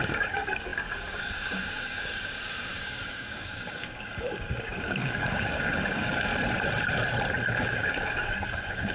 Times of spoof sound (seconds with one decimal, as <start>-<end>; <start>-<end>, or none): 0.0-6.3; 7.5-8.9